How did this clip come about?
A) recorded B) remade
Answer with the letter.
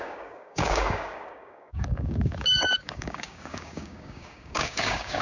B